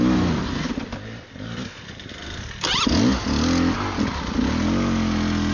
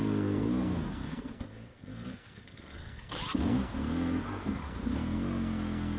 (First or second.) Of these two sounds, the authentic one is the first